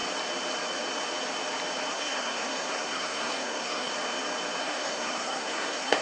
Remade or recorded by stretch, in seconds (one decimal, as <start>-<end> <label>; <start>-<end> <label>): 0.0-1.9 recorded; 1.9-3.9 remade; 3.9-4.6 recorded; 4.6-6.0 remade